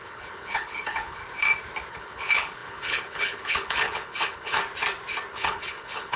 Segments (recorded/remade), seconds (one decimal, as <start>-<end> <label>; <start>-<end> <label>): 0.0-1.2 remade; 1.2-1.9 recorded; 1.9-4.6 remade; 4.6-5.3 recorded; 5.3-6.2 remade